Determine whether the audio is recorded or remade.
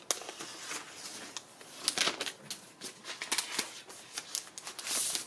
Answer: recorded